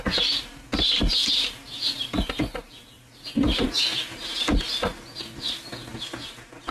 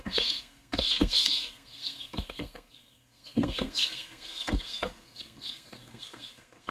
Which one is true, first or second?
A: first